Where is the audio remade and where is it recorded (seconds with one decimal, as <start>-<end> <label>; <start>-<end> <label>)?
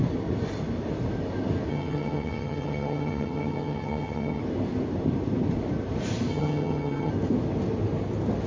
0.0-1.7 recorded; 1.7-4.4 remade; 4.4-6.3 recorded; 6.3-7.1 remade; 7.1-8.5 recorded